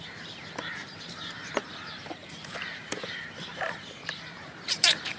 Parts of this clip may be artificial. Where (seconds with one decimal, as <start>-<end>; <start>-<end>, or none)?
0.0-5.2